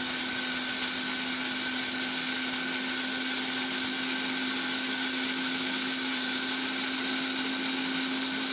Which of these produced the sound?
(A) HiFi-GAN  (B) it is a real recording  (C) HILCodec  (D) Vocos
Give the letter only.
B